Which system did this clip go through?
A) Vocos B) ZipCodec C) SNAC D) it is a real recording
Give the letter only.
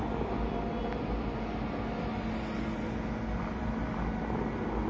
D